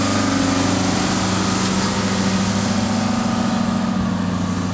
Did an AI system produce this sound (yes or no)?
no